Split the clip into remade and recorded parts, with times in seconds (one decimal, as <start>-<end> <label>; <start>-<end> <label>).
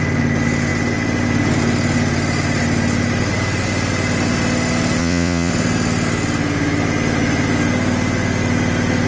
0.0-5.0 recorded; 5.0-5.5 remade; 5.5-9.1 recorded